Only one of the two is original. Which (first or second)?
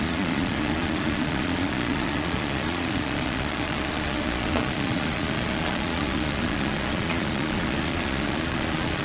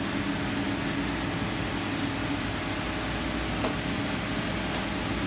second